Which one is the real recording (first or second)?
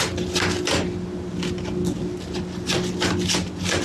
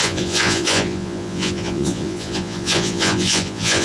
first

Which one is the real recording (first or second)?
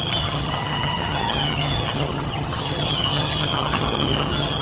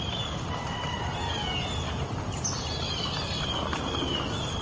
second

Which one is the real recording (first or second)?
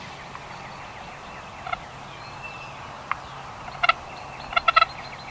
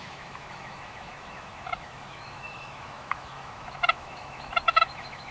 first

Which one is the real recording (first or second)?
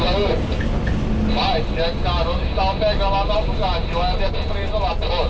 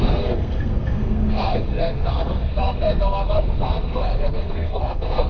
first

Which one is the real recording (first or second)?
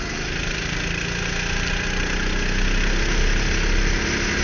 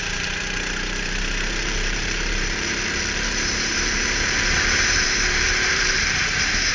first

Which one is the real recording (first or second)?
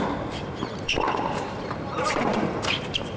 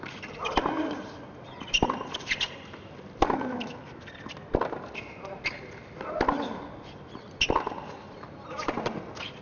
second